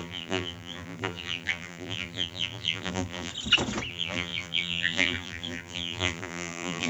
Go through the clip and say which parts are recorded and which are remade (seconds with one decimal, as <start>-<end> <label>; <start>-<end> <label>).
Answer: 0.0-3.3 remade; 3.3-3.9 recorded; 3.9-6.9 remade